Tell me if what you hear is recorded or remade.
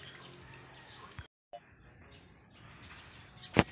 recorded